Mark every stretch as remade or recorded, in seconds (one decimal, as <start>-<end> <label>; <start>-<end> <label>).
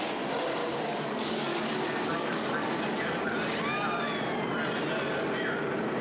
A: 0.0-0.6 recorded; 0.6-1.6 remade; 1.6-2.1 recorded; 2.1-2.7 remade; 2.7-6.0 recorded